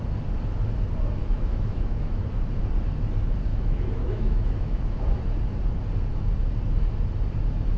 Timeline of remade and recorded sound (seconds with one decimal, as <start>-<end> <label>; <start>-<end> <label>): 0.0-1.2 recorded; 1.2-2.2 remade; 2.2-3.5 recorded; 3.5-5.2 remade; 5.2-7.8 recorded